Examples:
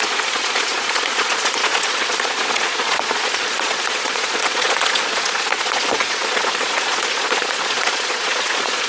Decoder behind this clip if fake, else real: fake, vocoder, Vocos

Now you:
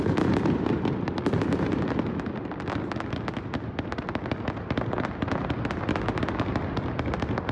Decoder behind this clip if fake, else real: real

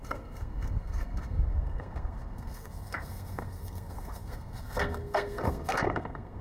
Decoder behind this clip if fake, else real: fake, codec, SNAC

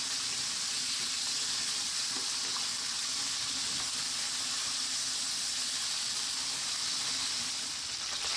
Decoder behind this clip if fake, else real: real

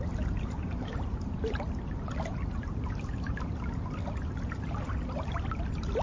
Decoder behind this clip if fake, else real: real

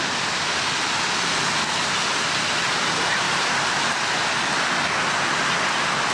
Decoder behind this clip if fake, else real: real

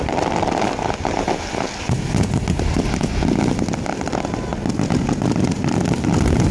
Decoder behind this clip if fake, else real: real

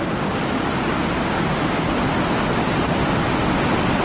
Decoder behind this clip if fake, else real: real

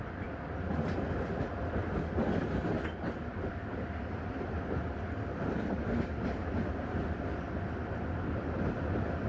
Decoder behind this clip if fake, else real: real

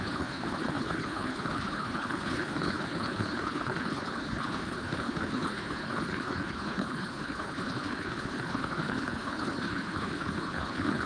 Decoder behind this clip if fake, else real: fake, codec, HILCodec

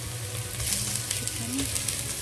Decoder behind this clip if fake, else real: real